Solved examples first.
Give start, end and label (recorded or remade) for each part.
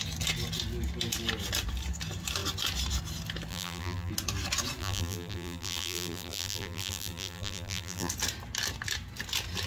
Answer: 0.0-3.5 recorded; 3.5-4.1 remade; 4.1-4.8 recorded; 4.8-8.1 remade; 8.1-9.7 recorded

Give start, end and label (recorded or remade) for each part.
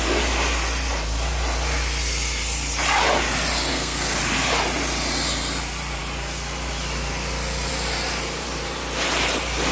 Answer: 0.0-3.7 recorded; 3.7-4.2 remade; 4.2-9.7 recorded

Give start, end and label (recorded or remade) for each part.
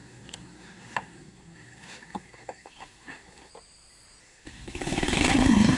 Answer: 0.0-3.5 remade; 3.5-4.2 recorded; 4.2-5.8 remade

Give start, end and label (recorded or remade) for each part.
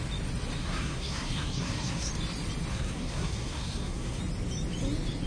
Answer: 0.0-0.6 recorded; 0.6-2.1 remade; 2.1-2.7 recorded; 2.7-4.2 remade; 4.2-5.3 recorded